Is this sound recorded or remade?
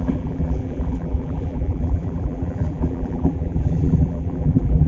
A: remade